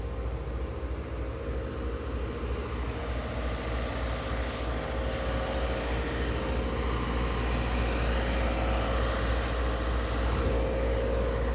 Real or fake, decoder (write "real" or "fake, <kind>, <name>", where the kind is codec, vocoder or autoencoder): real